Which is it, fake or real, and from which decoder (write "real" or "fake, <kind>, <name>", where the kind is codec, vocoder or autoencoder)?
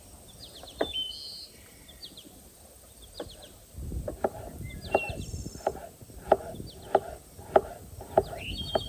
real